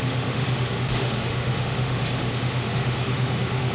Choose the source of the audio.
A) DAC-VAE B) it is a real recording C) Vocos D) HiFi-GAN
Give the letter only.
A